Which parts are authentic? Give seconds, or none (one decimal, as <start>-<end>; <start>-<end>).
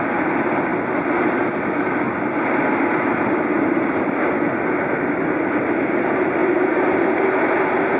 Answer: 0.0-8.0